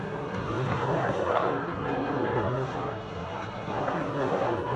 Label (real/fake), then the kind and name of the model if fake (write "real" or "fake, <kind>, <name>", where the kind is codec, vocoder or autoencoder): fake, codec, SNAC